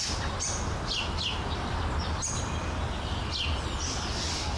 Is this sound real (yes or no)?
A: yes